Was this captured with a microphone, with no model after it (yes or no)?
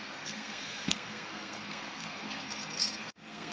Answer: no